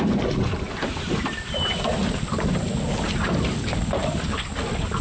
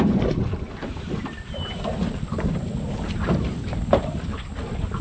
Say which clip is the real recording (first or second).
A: first